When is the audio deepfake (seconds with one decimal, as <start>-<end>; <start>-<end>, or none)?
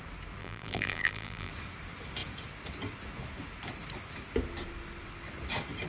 0.4-1.5